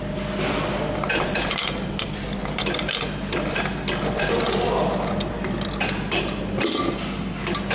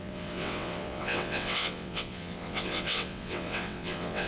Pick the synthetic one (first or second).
second